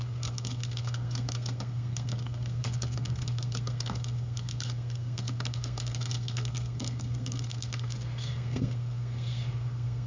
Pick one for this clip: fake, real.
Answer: fake